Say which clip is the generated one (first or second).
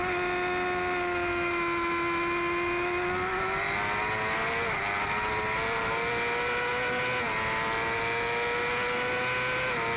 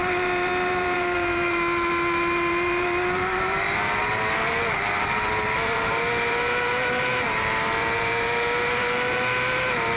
second